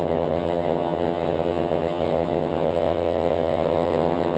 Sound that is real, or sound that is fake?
fake